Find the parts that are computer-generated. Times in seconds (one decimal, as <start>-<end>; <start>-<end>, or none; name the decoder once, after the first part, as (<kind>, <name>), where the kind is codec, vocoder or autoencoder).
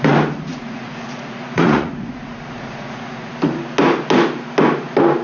0.5-3.3 (vocoder, Vocos)